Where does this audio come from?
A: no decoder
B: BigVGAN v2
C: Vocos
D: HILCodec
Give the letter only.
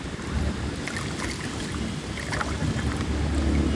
A